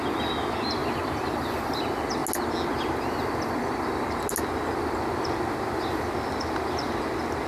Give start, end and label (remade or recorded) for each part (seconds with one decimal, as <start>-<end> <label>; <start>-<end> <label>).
0.0-0.8 recorded; 0.8-1.8 remade; 1.8-7.5 recorded